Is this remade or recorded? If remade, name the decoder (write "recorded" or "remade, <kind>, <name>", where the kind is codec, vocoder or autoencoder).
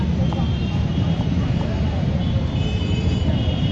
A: remade, vocoder, BigVGAN v2